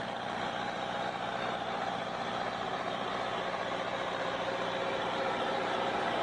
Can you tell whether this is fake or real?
real